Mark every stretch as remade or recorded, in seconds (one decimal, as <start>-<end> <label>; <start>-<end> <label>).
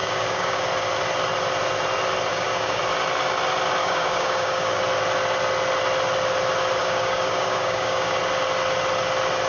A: 0.0-0.6 remade; 0.6-2.3 recorded; 2.3-2.8 remade; 2.8-3.8 recorded; 3.8-4.8 remade; 4.8-6.8 recorded; 6.8-8.2 remade; 8.2-9.5 recorded